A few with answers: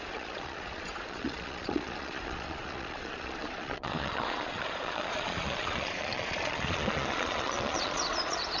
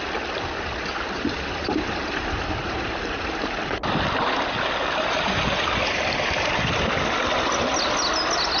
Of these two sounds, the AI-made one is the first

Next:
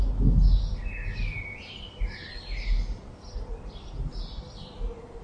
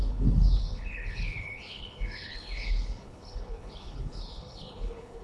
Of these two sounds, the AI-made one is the second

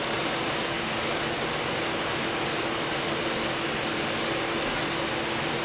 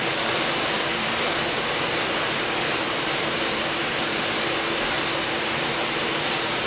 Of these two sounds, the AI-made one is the second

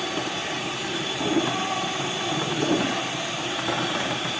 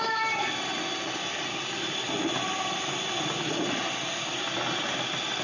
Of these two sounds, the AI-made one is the first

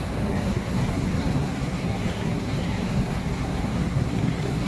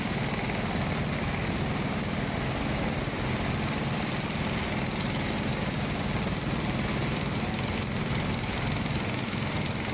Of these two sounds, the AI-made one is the first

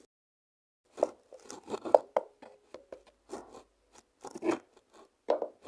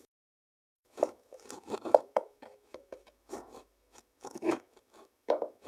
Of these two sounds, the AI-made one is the second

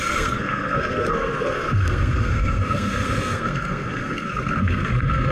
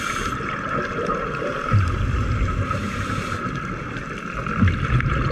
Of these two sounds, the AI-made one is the first